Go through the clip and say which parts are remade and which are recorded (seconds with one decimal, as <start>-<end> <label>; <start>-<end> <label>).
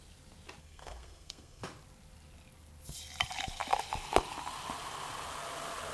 0.0-0.6 recorded; 0.6-1.6 remade; 1.6-5.9 recorded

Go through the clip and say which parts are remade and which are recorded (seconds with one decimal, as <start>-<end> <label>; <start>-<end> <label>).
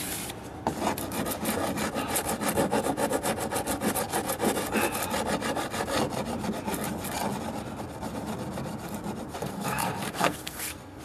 0.0-9.4 recorded; 9.4-11.0 remade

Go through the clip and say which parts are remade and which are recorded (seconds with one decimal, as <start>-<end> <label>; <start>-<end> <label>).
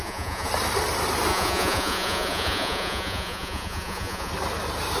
0.0-0.5 remade; 0.5-1.3 recorded; 1.3-4.3 remade; 4.3-5.0 recorded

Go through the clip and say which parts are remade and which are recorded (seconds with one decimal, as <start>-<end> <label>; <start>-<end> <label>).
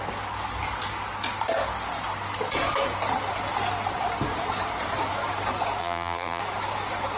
0.0-5.8 recorded; 5.8-6.4 remade; 6.4-7.2 recorded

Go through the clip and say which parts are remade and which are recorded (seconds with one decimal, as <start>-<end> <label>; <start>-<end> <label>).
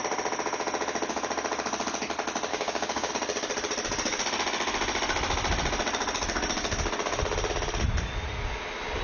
0.0-2.5 recorded; 2.5-3.1 remade; 3.1-9.0 recorded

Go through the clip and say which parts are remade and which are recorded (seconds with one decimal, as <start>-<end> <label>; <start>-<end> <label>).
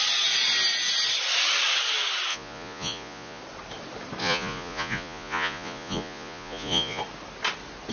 0.0-2.3 recorded; 2.3-3.4 remade; 3.4-4.2 recorded; 4.2-7.0 remade; 7.0-7.9 recorded